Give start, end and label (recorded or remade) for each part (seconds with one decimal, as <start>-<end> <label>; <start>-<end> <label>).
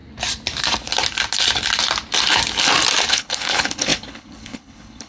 0.0-3.1 recorded; 3.1-5.1 remade